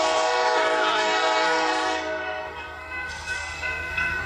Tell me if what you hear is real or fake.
fake